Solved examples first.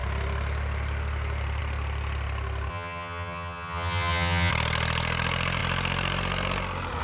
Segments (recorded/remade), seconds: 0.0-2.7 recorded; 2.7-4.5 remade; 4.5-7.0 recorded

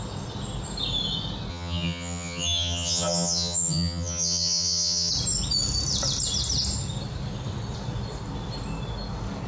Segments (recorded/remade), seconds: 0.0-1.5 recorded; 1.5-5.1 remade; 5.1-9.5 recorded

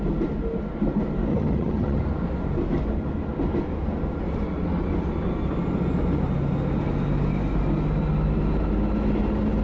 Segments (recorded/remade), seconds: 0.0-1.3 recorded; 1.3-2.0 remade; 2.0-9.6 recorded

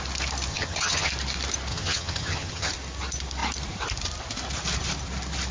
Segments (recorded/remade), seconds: 0.0-0.5 recorded; 0.5-1.1 remade; 1.1-1.7 recorded; 1.7-2.7 remade; 2.7-5.5 recorded